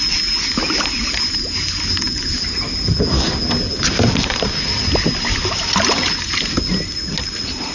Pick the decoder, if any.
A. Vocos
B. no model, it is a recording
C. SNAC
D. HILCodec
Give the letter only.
B